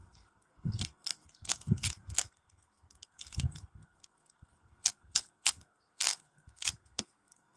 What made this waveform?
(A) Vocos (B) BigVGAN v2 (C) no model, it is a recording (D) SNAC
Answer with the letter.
D